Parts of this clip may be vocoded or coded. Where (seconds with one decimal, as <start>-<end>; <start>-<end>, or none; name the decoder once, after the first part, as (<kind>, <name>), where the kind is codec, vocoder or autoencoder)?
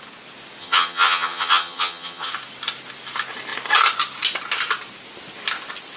0.6-2.3 (vocoder, HiFi-GAN)